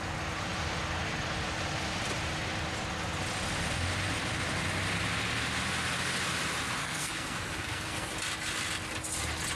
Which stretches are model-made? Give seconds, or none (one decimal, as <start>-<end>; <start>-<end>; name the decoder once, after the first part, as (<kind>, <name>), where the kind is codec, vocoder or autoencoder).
6.8-8.1 (codec, SNAC)

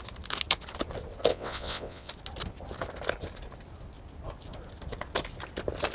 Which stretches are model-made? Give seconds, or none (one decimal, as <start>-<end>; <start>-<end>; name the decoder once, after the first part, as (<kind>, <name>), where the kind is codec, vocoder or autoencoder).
1.3-2.1 (vocoder, WaveNeXt)

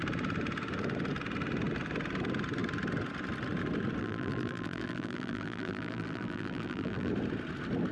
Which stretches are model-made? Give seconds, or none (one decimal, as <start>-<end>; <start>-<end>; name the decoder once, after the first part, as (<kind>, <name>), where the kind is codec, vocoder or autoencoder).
4.0-7.1 (vocoder, BigVGAN v2)

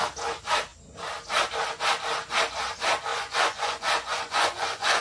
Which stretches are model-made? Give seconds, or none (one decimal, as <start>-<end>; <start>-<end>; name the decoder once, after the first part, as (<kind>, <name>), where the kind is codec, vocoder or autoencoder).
3.1-5.0 (vocoder, Vocos)